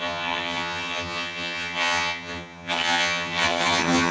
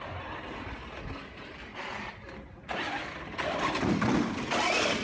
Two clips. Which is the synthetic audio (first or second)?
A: first